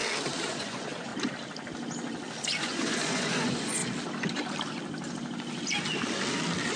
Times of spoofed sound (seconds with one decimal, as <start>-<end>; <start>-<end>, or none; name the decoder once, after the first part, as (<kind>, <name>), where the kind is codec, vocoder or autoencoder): 0.5-1.1 (vocoder, Vocos); 2.6-3.8